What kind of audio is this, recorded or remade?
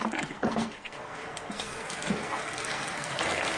remade